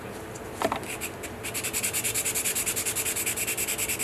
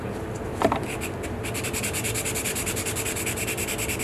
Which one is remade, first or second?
second